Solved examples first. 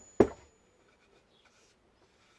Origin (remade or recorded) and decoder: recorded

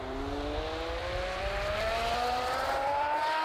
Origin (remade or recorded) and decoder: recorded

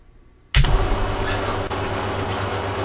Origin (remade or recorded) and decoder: recorded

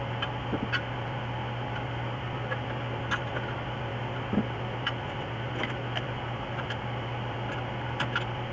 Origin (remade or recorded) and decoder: recorded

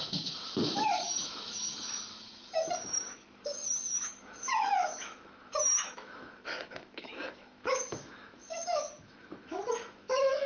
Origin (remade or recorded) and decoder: remade, autoencoder, DAC-VAE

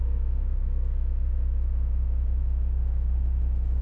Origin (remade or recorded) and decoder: remade, autoencoder, DAC-VAE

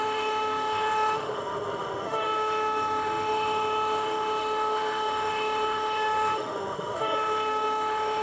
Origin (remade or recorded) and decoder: remade, autoencoder, DAC-VAE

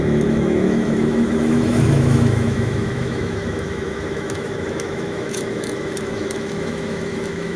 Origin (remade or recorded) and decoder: remade, autoencoder, DAC-VAE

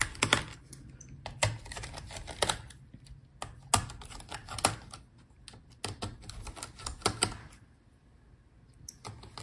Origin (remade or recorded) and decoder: recorded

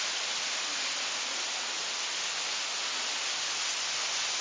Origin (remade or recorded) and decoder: recorded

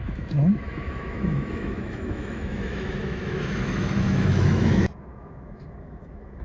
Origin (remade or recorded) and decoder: remade, autoencoder, DAC-VAE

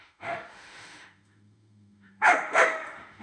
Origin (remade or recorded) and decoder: remade, autoencoder, DAC-VAE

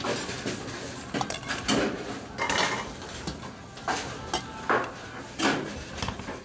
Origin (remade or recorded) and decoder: recorded